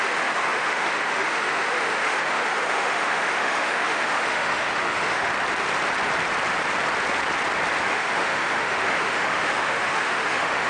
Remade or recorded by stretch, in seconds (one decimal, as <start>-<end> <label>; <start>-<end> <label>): 0.0-5.3 remade; 5.3-7.8 recorded; 7.8-10.7 remade